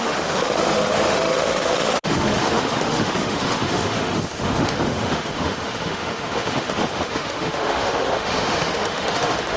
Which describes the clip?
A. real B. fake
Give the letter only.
B